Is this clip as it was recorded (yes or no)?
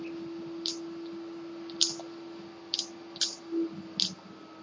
yes